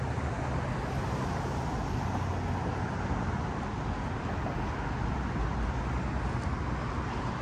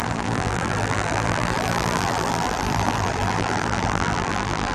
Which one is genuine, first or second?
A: first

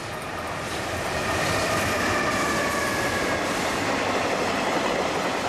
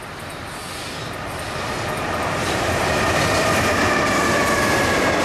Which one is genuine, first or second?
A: second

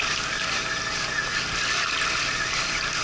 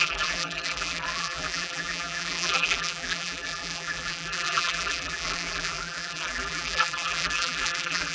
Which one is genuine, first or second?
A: first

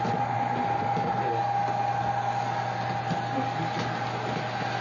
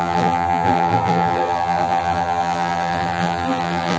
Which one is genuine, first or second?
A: first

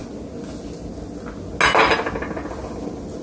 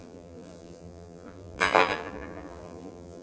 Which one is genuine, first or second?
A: first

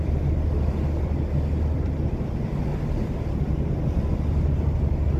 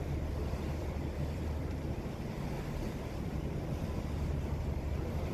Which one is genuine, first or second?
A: first